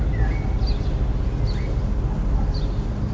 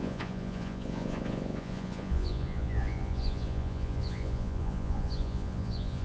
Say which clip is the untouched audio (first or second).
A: first